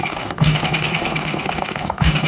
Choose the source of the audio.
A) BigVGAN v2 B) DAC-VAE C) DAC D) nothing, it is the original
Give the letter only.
C